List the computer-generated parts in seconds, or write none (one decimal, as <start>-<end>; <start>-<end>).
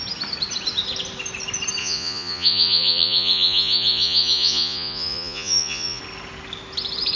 1.8-6.0